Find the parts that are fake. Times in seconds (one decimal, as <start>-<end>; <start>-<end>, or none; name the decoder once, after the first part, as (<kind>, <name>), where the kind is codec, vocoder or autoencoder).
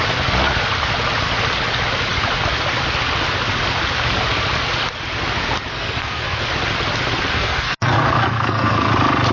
5.7-6.4 (codec, SNAC); 7.3-8.9